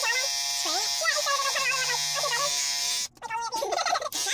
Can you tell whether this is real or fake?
real